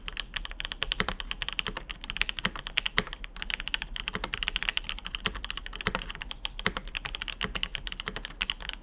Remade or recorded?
recorded